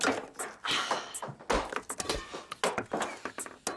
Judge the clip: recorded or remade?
recorded